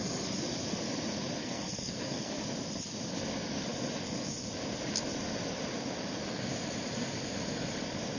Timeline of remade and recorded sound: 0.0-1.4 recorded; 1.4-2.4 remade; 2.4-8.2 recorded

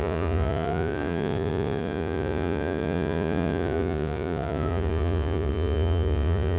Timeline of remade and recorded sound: 0.0-6.6 remade